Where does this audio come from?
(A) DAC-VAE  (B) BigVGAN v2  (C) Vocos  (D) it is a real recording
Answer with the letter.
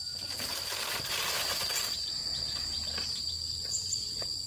B